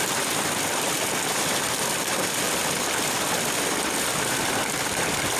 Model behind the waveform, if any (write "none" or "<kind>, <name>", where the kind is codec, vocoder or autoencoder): none